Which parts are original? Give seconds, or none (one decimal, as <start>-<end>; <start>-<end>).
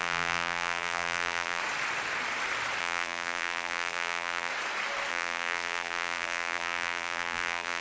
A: 1.6-2.8; 4.5-5.1